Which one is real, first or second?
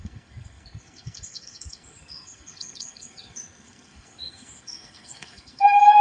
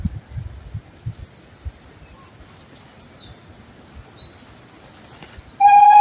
second